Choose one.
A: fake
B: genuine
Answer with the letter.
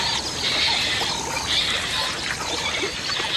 B